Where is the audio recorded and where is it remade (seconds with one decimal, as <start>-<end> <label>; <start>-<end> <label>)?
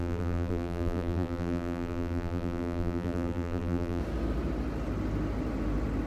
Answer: 0.0-4.0 remade; 4.0-6.1 recorded